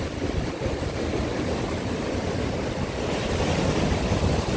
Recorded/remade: recorded